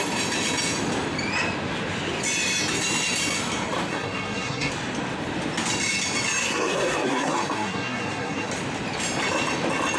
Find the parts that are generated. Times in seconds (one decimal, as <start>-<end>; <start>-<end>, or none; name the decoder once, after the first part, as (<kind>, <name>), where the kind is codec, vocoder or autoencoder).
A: 3.9-4.7 (codec, SNAC); 6.4-8.5